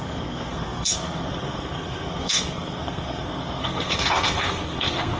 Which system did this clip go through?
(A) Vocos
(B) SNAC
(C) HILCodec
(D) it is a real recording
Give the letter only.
B